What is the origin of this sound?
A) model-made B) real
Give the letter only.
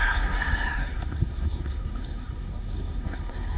A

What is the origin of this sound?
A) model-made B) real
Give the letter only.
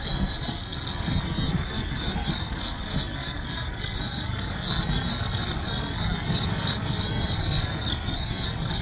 A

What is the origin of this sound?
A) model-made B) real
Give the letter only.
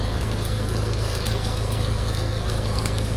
A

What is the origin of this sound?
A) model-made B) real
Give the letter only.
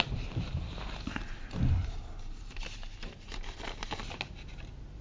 B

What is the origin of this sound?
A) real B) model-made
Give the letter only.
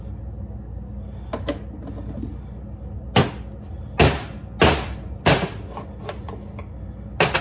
A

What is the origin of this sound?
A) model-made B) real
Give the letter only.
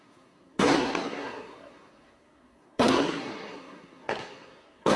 A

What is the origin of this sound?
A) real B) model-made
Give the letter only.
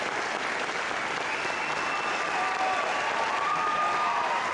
A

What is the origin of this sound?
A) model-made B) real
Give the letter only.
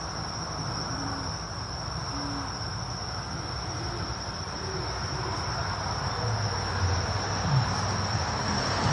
B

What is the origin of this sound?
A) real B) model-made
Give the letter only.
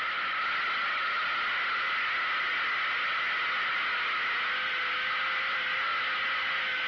A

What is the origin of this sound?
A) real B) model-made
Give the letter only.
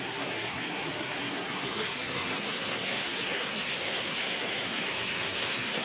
B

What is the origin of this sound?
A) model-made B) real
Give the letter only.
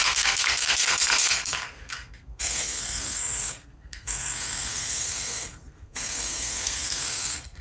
A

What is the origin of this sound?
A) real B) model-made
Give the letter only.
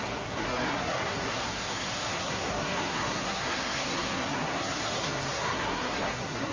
B